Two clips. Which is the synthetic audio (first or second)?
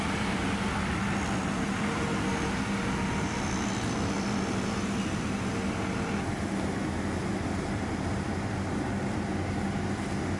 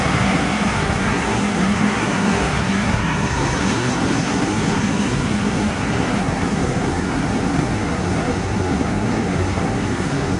second